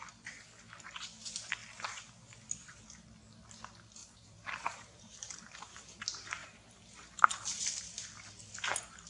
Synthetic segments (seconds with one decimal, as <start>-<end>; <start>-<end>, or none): 4.0-6.0; 6.4-7.6